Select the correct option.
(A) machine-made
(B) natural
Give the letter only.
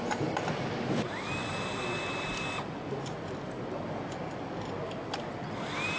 B